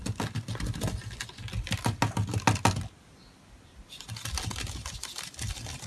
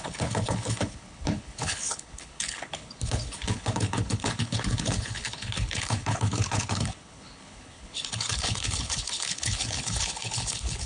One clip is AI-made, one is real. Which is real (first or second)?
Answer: first